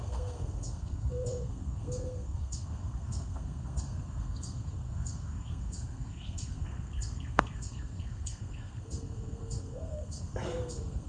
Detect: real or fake fake